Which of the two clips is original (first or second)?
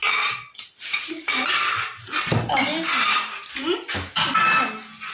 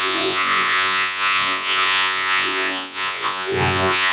first